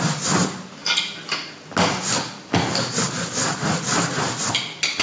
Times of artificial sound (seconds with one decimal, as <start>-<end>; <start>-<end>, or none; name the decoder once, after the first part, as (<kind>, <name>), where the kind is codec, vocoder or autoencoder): none